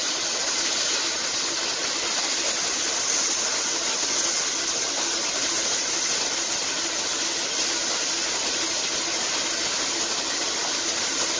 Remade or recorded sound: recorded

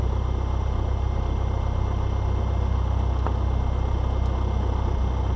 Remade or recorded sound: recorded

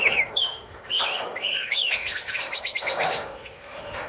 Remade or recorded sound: remade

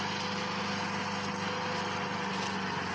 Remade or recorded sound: recorded